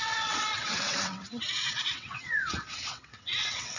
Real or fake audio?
fake